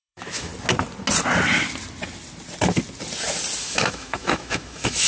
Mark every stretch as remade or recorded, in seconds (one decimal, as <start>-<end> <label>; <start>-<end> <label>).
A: 0.0-0.5 remade; 0.5-3.6 recorded; 3.6-5.1 remade